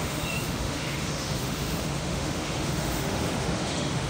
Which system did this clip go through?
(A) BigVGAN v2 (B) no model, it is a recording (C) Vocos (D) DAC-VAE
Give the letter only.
D